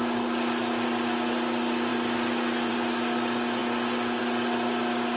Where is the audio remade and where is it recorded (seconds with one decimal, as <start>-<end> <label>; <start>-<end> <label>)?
0.0-5.2 recorded